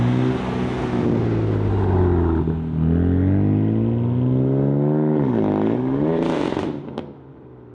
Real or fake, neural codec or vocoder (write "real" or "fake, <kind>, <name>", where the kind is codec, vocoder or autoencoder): real